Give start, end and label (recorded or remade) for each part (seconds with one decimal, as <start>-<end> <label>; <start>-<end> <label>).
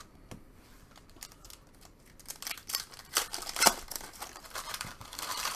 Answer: 0.0-3.0 recorded; 3.0-5.6 remade